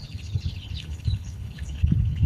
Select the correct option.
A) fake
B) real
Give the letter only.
A